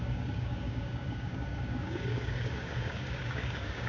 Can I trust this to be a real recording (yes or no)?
no